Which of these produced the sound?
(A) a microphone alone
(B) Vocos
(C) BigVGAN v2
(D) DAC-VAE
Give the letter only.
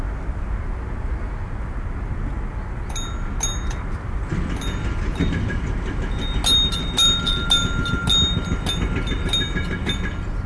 A